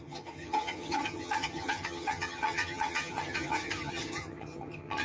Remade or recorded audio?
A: remade